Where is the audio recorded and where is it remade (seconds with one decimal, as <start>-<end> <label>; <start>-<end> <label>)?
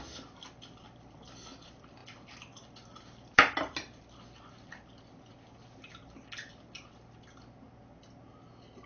0.0-8.9 recorded